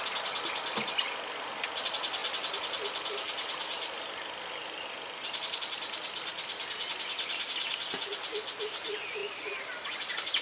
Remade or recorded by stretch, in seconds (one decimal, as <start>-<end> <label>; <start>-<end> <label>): 0.0-10.4 recorded